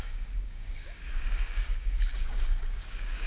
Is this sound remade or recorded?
remade